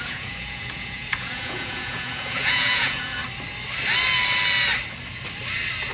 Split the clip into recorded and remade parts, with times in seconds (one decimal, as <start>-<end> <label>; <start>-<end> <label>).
0.0-3.2 remade; 3.2-5.9 recorded